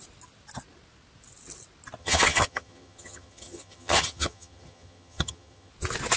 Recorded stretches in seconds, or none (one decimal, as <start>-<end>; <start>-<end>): 0.0-2.0; 5.7-6.2